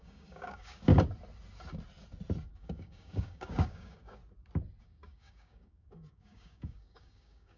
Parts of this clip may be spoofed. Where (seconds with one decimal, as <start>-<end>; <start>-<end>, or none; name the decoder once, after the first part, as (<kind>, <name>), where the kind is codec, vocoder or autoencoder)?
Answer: 0.0-0.9 (codec, DAC); 2.5-4.2; 4.8-7.6